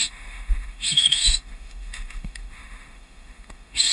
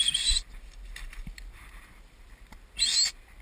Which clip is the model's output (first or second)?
first